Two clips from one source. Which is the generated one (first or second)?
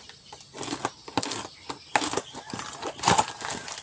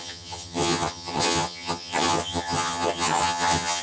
second